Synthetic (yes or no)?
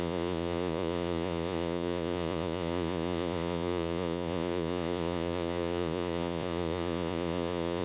yes